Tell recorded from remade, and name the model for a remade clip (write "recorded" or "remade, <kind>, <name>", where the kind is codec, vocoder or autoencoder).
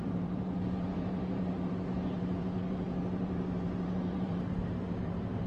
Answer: remade, vocoder, BigVGAN v2